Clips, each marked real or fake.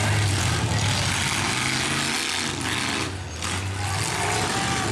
real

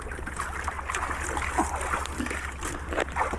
real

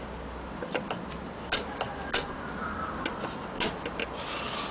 real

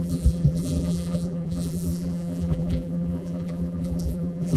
fake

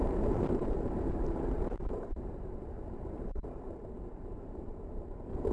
fake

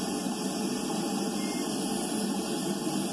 real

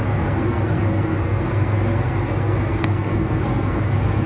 fake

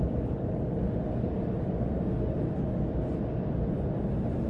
real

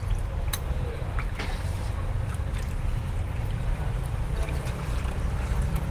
fake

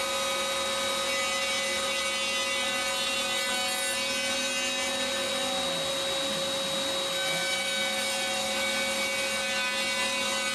real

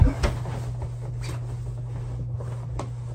real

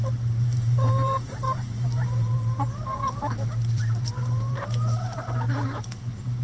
fake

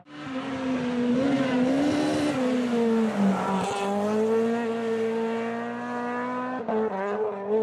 real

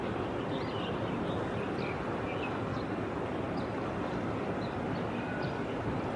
real